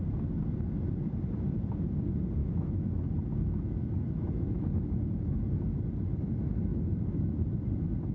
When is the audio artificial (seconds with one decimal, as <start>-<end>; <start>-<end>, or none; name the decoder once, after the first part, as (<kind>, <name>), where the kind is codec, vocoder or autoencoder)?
2.4-5.8 (autoencoder, DAC-VAE); 6.7-7.3